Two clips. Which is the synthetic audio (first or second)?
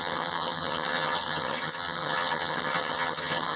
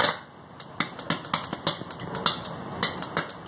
first